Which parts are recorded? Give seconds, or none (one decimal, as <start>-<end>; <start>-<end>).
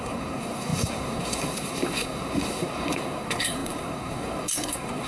none